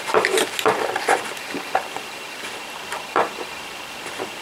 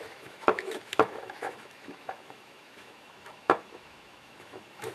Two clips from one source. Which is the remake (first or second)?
second